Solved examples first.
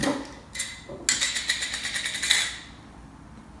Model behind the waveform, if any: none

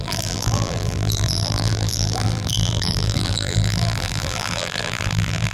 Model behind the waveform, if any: vocoder, BigVGAN v2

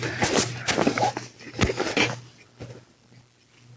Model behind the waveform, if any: none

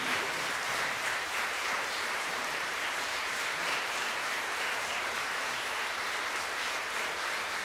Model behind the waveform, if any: vocoder, BigVGAN v2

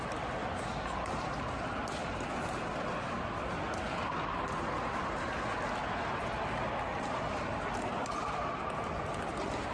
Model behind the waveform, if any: none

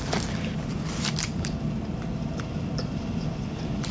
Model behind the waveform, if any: none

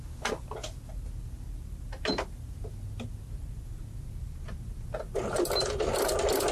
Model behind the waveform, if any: none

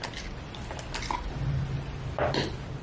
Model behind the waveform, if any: none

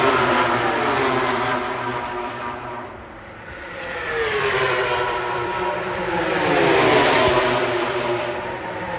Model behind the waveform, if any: vocoder, BigVGAN v2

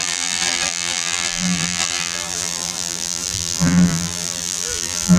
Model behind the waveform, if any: vocoder, BigVGAN v2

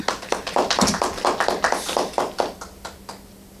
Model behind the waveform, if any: none